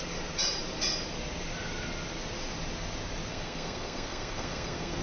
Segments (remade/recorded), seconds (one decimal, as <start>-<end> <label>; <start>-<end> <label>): 0.0-3.3 recorded; 3.3-5.0 remade